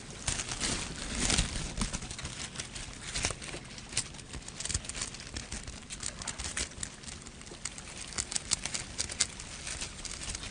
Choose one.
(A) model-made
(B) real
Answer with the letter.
B